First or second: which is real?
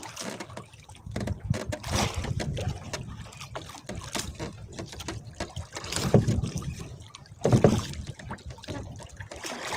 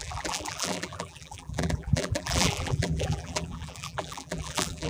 first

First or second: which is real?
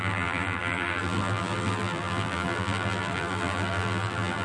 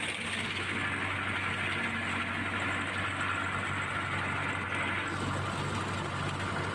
second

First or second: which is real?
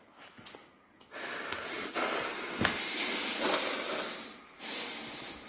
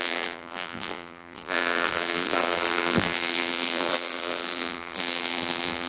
first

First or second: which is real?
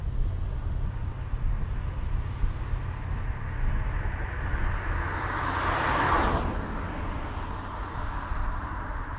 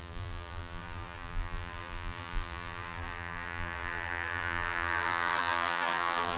first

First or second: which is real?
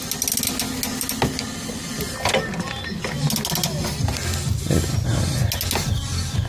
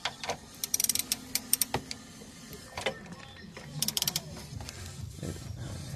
first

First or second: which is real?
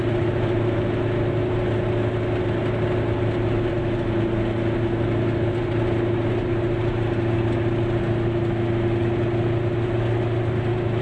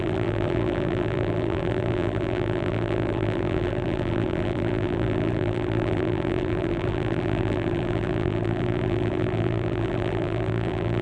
first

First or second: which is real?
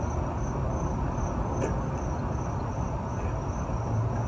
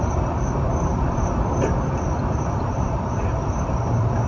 first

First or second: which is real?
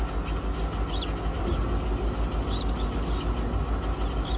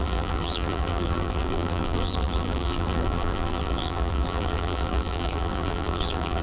first